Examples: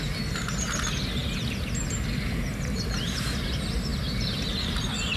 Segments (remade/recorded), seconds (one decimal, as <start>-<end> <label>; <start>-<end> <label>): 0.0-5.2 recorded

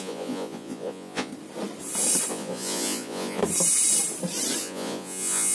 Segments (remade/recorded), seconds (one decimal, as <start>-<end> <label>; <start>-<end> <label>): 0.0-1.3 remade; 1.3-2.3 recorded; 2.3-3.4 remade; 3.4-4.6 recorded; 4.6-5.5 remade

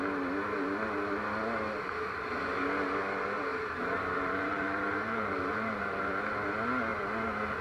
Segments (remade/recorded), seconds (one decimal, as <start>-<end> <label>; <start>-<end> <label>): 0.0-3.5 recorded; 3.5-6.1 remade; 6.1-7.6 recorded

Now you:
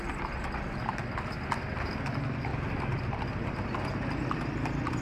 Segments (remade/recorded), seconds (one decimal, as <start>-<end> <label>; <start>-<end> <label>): 0.0-5.0 recorded

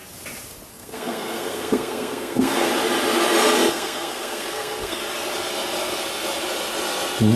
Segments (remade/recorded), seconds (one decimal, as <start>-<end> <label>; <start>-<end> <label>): 0.0-0.7 recorded; 0.7-2.7 remade; 2.7-3.7 recorded; 3.7-5.0 remade; 5.0-7.4 recorded